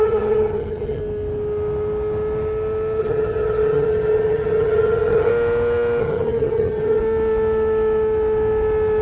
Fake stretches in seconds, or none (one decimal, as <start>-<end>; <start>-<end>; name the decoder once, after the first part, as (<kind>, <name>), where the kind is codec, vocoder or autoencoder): 0.0-1.0 (vocoder, HiFi-GAN); 3.0-5.3; 6.0-7.0